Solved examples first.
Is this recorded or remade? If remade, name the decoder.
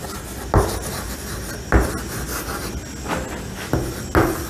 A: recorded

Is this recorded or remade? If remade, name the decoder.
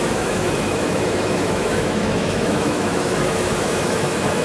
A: remade, autoencoder, DAC-VAE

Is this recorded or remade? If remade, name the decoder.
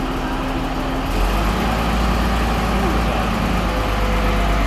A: recorded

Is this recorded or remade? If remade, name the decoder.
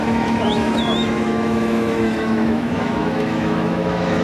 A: remade, autoencoder, DAC-VAE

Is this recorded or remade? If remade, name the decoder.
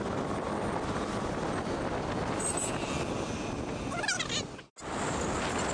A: recorded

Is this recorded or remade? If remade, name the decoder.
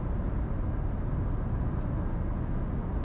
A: recorded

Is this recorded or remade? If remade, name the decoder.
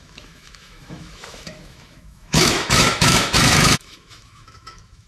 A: remade, autoencoder, DAC-VAE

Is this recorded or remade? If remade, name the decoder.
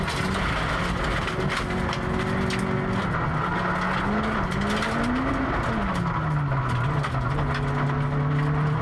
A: recorded